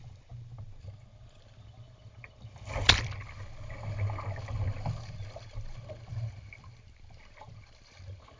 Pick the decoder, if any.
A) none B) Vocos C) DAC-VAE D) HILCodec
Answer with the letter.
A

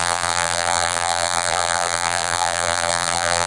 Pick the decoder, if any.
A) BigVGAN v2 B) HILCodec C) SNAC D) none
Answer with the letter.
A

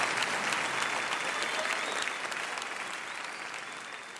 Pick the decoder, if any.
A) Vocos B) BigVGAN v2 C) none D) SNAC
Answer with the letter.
C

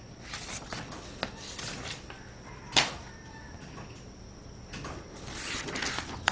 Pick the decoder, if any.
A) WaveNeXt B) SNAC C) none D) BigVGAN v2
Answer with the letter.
C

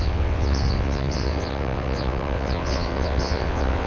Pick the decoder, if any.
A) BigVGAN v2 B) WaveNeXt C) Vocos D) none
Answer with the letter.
B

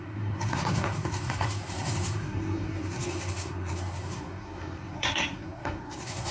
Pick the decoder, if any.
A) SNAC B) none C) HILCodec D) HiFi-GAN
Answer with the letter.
A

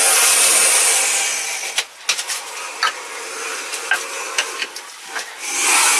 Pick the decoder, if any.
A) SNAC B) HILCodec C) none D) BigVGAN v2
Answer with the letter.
C